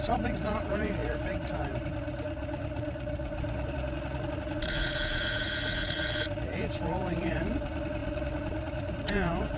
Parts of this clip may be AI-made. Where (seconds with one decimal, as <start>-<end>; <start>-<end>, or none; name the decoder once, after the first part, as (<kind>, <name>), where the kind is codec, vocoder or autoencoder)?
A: 0.0-9.6 (vocoder, Vocos)